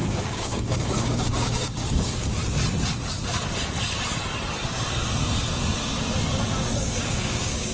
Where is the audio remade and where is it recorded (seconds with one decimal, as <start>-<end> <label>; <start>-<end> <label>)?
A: 0.0-2.4 remade; 2.4-6.8 recorded; 6.8-7.7 remade